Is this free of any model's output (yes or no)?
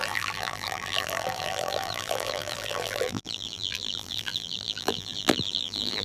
no